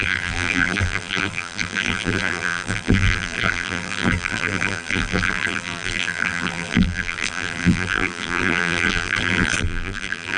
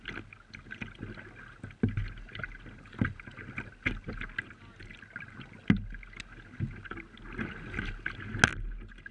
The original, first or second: second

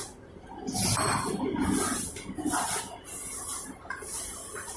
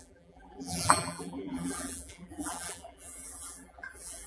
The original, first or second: first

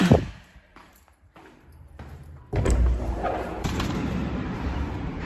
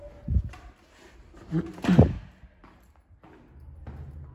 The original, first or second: second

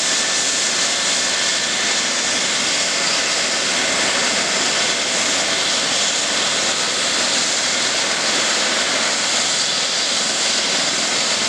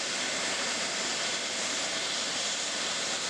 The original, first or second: first